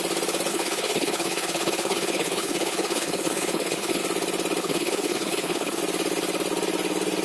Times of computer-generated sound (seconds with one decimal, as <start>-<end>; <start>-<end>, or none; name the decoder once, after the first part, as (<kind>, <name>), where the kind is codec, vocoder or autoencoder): 0.5-4.0 (codec, HILCodec); 4.6-5.8